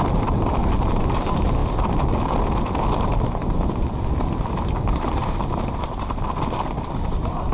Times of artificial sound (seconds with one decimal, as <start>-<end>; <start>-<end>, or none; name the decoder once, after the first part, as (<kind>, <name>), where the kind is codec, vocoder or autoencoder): 0.0-0.6 (vocoder, BigVGAN v2); 1.1-7.5